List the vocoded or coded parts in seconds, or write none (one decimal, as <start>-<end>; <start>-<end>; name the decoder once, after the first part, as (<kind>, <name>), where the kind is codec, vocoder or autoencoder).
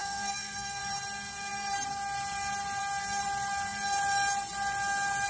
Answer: 0.0-0.8 (codec, SNAC)